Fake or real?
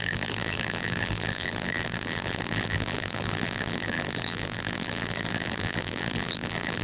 fake